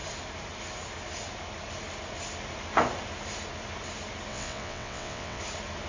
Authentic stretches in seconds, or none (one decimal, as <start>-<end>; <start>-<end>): 0.0-4.3; 5.4-5.9